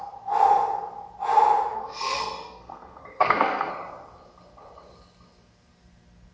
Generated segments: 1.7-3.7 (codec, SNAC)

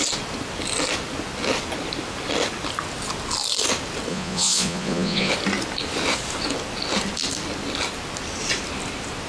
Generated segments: 4.1-5.3 (vocoder, Vocos)